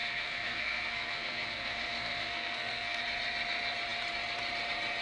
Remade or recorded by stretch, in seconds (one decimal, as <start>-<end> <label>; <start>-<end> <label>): 0.0-3.0 remade; 3.0-5.0 recorded